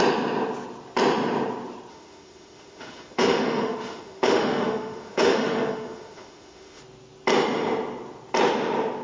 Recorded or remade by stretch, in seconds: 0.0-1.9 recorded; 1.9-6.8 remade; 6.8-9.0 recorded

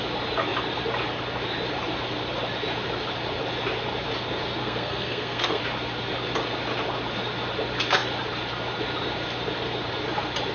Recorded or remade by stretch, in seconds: 0.0-4.6 recorded; 4.6-5.6 remade; 5.6-10.5 recorded

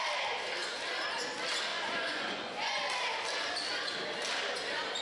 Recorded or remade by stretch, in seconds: 0.0-1.7 recorded; 1.7-2.8 remade; 2.8-5.0 recorded

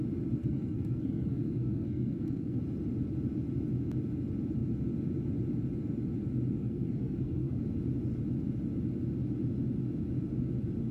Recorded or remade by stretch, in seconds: 0.0-0.4 recorded; 0.4-2.6 remade; 2.6-6.6 recorded; 6.6-7.6 remade; 7.6-10.9 recorded